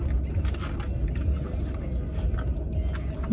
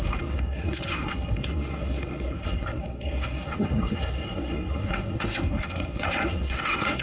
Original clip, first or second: first